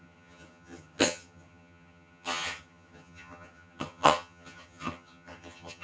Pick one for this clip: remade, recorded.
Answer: remade